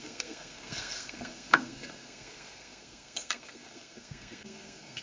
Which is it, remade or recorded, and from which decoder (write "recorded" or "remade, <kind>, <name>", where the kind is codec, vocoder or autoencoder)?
remade, codec, SNAC